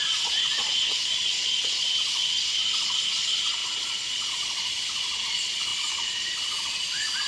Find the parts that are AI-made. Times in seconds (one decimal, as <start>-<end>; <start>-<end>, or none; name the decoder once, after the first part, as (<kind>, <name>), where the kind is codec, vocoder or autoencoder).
0.0-7.3 (vocoder, Vocos)